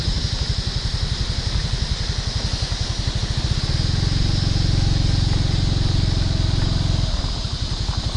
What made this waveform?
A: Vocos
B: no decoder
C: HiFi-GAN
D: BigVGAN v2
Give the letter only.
B